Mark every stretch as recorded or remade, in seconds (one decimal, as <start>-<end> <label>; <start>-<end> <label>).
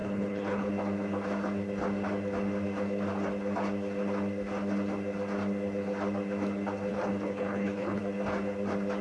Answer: 0.0-0.7 remade; 0.7-6.9 recorded; 6.9-8.0 remade; 8.0-9.0 recorded